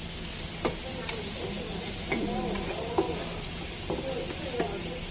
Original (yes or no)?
yes